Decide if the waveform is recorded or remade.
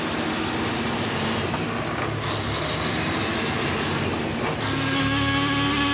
recorded